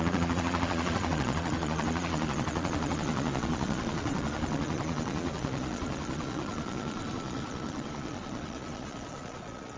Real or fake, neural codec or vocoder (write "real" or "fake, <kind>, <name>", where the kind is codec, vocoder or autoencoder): fake, vocoder, Vocos